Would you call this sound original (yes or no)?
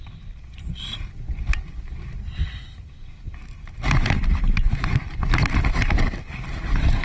yes